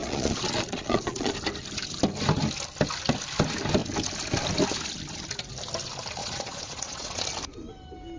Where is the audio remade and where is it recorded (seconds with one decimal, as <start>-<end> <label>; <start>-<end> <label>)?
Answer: 0.0-1.3 remade; 1.3-6.2 recorded; 6.2-7.2 remade; 7.2-8.2 recorded